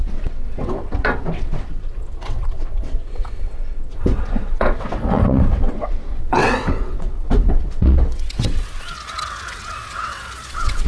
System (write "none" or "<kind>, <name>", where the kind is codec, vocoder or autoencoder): vocoder, WaveNeXt